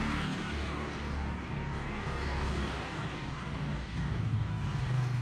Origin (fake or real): fake